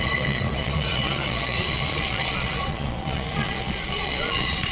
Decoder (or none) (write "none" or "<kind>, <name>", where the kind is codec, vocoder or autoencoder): vocoder, Vocos